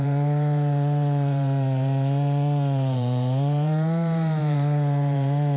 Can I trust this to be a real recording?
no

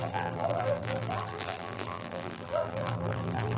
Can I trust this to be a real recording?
no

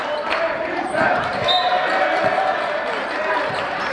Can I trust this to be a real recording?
no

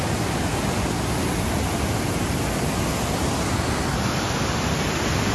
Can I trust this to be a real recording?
yes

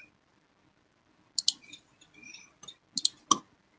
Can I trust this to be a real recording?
yes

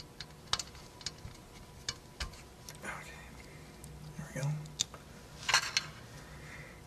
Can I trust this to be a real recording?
yes